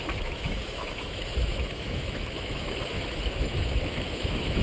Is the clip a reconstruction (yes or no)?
yes